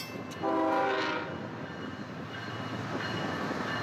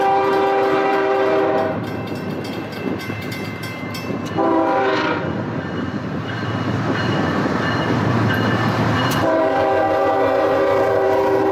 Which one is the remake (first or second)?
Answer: second